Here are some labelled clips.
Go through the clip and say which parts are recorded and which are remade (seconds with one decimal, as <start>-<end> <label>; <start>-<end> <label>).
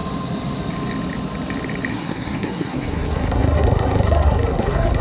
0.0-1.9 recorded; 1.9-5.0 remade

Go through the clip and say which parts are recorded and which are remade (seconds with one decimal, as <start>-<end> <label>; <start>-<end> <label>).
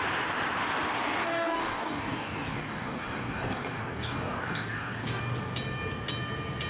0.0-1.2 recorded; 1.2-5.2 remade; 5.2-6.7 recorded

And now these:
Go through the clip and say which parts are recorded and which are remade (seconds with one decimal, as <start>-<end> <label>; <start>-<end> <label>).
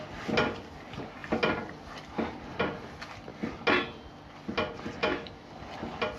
0.0-5.0 recorded; 5.0-5.5 remade; 5.5-6.2 recorded